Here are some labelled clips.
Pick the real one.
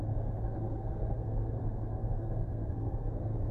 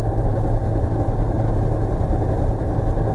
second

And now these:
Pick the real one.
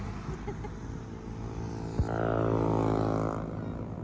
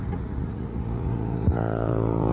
first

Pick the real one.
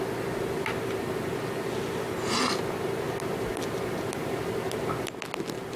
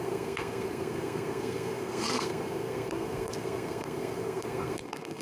first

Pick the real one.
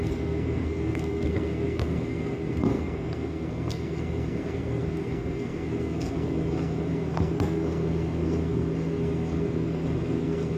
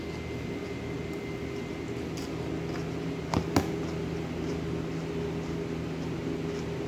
second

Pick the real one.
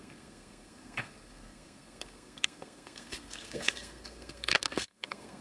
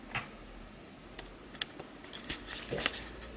second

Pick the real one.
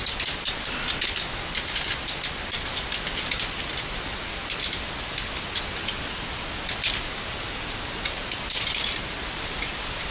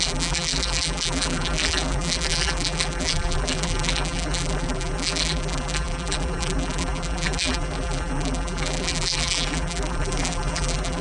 first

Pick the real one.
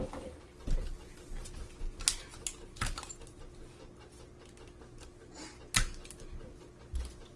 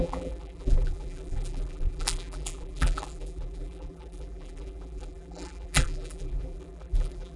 first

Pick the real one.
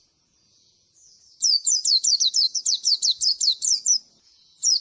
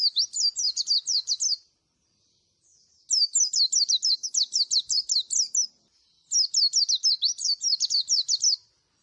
second